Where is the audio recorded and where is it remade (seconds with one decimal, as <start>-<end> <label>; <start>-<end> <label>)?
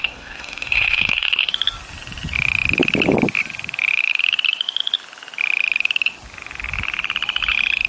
0.0-1.5 remade; 1.5-7.9 recorded